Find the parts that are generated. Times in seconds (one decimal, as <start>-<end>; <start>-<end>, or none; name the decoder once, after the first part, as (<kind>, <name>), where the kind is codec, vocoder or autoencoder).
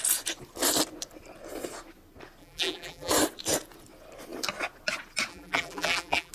2.4-3.1 (vocoder, BigVGAN v2); 5.3-6.3